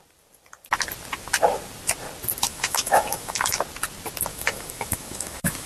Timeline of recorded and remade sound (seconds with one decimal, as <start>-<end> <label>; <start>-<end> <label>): 0.0-2.5 recorded; 2.5-3.6 remade; 3.6-4.3 recorded; 4.3-5.7 remade